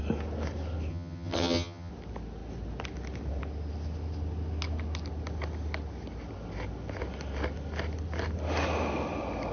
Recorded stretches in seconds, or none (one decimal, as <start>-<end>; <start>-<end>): 0.0-0.9; 1.9-9.5